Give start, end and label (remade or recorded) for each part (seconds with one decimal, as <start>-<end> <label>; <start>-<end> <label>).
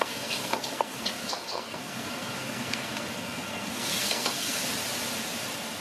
0.0-4.6 remade; 4.6-5.8 recorded